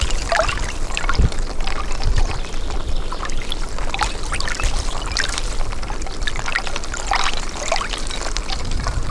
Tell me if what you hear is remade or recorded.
recorded